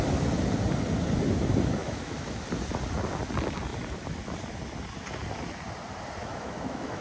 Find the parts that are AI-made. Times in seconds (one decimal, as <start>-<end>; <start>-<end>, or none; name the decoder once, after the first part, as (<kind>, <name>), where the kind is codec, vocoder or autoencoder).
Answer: 1.8-2.4 (autoencoder, DAC-VAE); 6.2-7.0